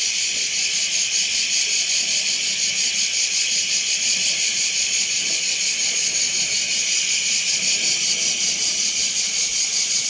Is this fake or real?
fake